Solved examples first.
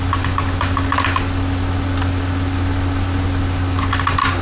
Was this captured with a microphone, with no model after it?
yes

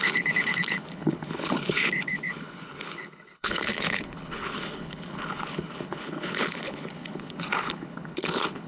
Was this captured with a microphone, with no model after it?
no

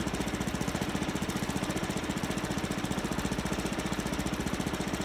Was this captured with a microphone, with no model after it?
yes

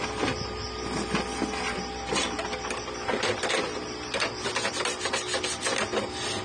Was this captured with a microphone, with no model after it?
yes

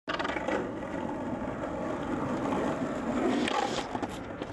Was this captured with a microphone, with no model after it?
yes